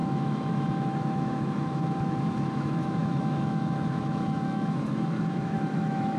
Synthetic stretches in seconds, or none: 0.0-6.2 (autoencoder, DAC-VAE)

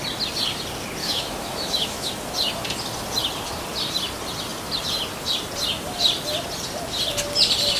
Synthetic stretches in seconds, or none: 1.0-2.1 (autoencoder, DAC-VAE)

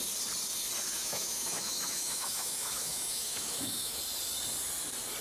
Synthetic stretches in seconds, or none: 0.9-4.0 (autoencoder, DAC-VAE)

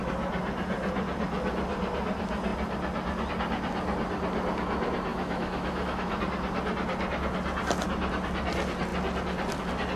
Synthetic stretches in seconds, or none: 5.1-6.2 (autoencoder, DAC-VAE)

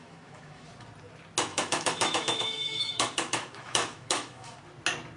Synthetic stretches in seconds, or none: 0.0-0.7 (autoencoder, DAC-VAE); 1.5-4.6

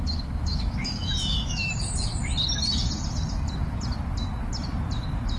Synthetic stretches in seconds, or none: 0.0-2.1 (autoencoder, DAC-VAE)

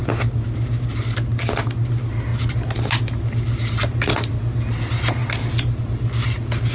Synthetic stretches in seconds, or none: none

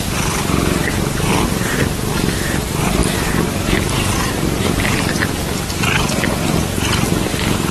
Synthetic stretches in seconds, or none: none